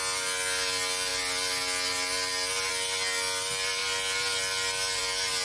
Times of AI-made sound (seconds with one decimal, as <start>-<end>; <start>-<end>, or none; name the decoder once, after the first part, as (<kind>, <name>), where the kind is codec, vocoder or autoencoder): none